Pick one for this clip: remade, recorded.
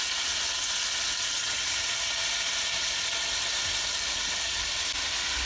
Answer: recorded